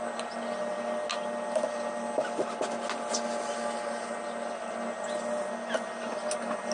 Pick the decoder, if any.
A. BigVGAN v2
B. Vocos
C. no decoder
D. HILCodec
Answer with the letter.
C